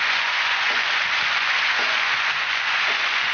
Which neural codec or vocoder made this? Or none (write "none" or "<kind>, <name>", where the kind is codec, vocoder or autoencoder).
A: vocoder, Vocos